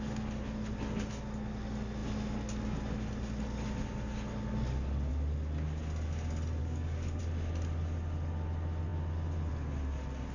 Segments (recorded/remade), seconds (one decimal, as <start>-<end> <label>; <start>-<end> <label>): 0.0-6.6 recorded; 6.6-7.2 remade; 7.2-10.3 recorded